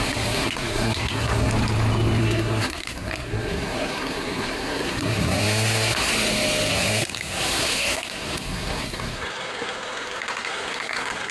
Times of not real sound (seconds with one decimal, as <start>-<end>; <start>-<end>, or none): 0.0-1.5; 2.2-6.1; 6.7-11.3